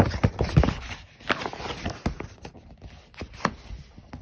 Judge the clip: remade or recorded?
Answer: recorded